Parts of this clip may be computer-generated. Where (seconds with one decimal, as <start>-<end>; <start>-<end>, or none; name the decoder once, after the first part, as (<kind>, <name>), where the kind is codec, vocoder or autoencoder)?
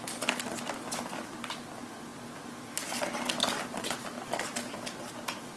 none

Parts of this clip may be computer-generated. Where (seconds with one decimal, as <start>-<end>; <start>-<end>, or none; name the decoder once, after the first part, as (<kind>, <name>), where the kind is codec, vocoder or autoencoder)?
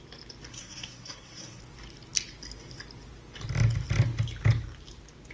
0.5-1.6 (codec, SNAC)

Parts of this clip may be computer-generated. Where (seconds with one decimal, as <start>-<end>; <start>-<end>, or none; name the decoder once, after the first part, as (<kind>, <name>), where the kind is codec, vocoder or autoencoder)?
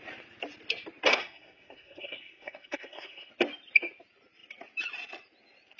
1.1-3.3 (codec, SNAC)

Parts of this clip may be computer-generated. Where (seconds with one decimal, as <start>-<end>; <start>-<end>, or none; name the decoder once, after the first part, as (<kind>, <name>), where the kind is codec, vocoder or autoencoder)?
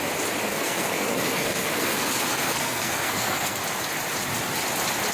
0.5-3.6 (codec, SNAC)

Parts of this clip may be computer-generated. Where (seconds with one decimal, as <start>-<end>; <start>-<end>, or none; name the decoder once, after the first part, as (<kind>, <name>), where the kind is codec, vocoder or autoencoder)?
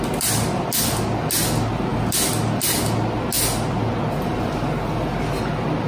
none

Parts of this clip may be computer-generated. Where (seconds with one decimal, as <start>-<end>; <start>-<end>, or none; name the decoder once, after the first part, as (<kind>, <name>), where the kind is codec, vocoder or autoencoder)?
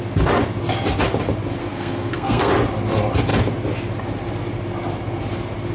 1.6-2.5 (codec, SNAC)